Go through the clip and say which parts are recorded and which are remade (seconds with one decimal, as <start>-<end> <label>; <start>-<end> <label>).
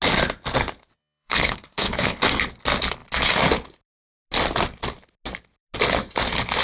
0.0-0.9 recorded; 0.9-2.2 remade; 2.2-6.6 recorded